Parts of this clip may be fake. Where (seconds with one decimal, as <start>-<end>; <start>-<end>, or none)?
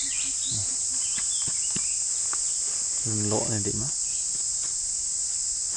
none